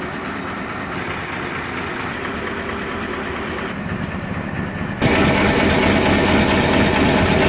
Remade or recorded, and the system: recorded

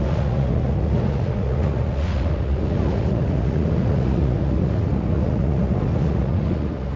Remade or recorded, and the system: remade, vocoder, Vocos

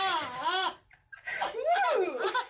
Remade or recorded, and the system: recorded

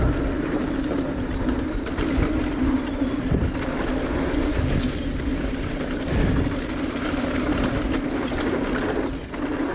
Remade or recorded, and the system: recorded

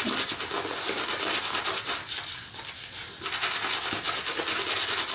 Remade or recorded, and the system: recorded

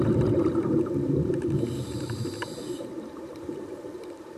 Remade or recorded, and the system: remade, vocoder, BigVGAN v2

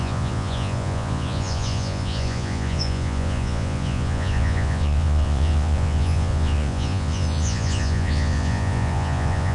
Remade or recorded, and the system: remade, vocoder, Vocos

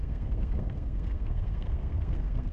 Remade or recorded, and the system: remade, codec, SNAC